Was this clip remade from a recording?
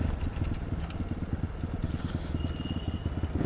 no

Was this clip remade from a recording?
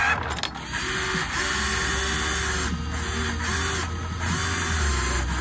no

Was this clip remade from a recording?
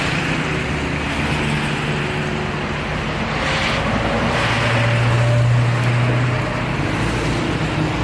no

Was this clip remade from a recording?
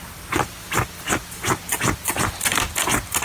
no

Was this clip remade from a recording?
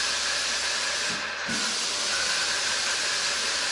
no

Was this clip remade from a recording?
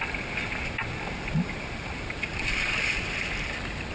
yes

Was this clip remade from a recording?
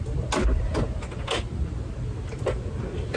no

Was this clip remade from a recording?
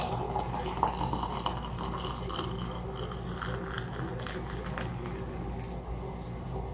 no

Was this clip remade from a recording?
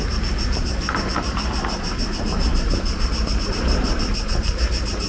yes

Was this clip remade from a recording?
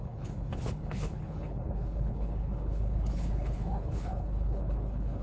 yes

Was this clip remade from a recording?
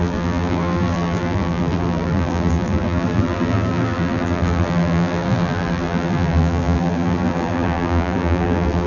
yes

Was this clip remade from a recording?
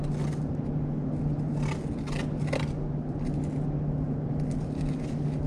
no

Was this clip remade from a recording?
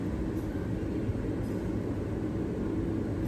no